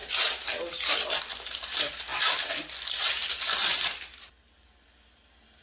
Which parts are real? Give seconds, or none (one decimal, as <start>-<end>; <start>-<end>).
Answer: 0.0-5.6